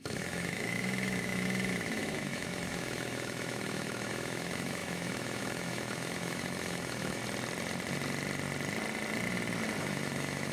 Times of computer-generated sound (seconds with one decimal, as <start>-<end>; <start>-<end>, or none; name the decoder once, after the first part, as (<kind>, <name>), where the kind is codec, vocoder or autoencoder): 0.0-7.2 (autoencoder, DAC-VAE); 9.8-10.5